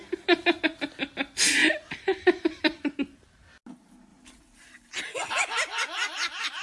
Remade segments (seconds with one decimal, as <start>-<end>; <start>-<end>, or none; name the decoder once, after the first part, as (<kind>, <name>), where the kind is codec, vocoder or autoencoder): 1.6-2.9 (vocoder, BigVGAN v2); 4.1-5.0